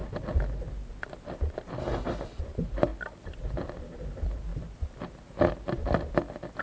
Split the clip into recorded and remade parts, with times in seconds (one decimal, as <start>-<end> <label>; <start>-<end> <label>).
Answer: 0.0-1.8 recorded; 1.8-2.4 remade; 2.4-6.6 recorded